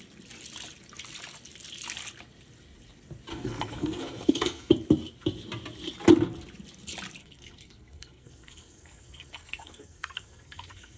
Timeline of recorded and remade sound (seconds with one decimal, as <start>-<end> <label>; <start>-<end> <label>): 0.0-3.3 recorded; 3.3-4.7 remade; 4.7-7.2 recorded; 7.2-11.0 remade